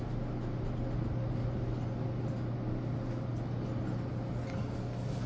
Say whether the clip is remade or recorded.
recorded